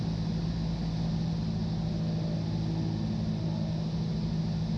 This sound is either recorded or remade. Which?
recorded